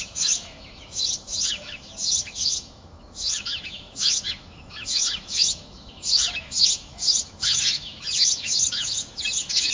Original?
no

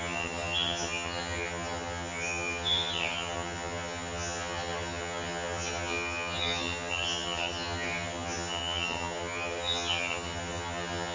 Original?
no